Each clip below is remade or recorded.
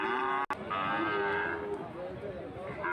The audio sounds recorded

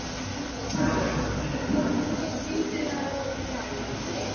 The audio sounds recorded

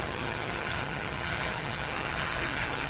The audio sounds remade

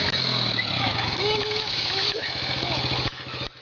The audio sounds remade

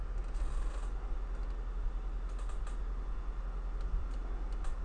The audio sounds recorded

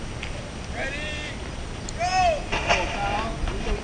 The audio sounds recorded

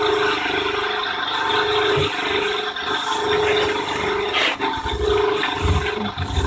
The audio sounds recorded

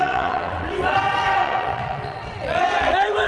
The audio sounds remade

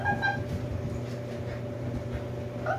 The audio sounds recorded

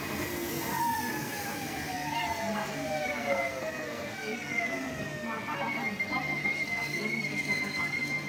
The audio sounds remade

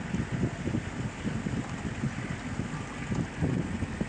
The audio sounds recorded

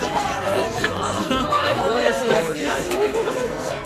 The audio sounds remade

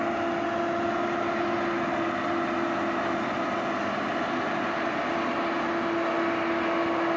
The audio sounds recorded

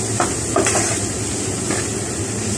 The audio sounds remade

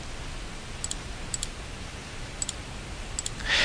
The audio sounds recorded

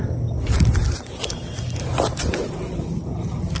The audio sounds recorded